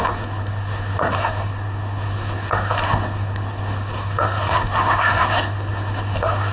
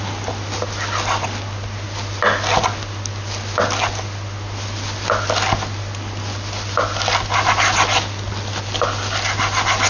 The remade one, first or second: first